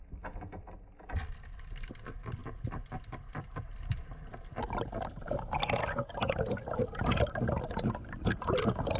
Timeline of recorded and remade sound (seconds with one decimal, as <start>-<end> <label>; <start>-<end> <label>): 0.0-9.0 recorded